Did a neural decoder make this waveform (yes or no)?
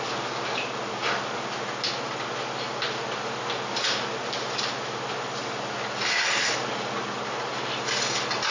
no